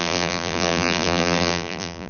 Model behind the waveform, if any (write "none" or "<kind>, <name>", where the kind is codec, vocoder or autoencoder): vocoder, BigVGAN v2